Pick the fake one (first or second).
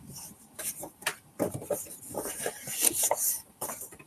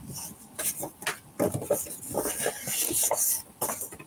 first